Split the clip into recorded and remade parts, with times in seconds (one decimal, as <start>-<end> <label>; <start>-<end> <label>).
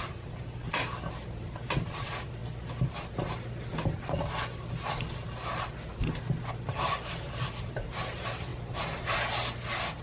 0.0-2.4 remade; 2.4-6.7 recorded; 6.7-8.5 remade; 8.5-10.0 recorded